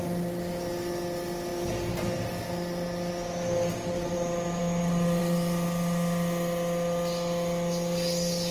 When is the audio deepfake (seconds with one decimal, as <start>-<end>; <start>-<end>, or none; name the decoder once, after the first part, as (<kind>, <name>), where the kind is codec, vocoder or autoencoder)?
none